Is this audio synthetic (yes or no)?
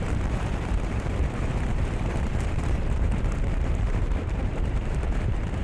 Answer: yes